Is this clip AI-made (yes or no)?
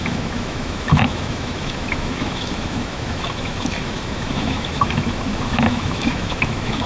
yes